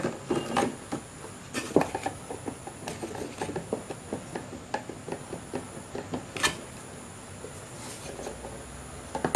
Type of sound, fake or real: real